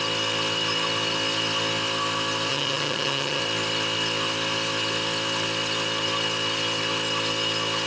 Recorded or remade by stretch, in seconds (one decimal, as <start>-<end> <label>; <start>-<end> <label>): 0.0-2.5 recorded; 2.5-3.4 remade; 3.4-7.9 recorded